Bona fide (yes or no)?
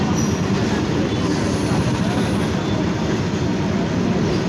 yes